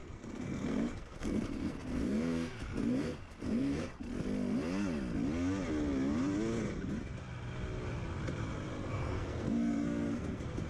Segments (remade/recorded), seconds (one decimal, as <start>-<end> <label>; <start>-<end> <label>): 0.0-3.9 remade; 3.9-8.9 recorded; 8.9-10.7 remade